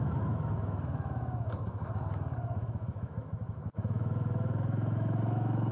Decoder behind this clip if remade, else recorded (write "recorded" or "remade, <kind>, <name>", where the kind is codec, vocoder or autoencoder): remade, autoencoder, DAC-VAE